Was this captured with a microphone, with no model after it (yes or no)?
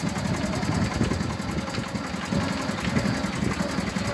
yes